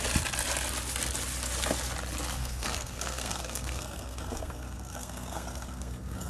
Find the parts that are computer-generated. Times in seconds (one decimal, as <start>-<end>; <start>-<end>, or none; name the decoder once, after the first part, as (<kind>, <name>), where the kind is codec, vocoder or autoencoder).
2.4-6.3 (codec, SNAC)